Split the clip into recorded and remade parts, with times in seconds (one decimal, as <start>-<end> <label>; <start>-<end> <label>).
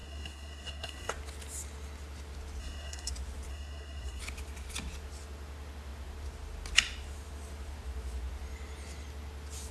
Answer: 0.0-1.1 remade; 1.1-2.6 recorded; 2.6-3.1 remade; 3.1-3.5 recorded; 3.5-4.2 remade; 4.2-9.7 recorded